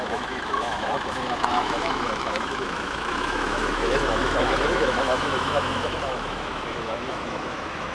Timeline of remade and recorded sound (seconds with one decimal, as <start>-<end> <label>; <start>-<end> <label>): 0.0-7.9 remade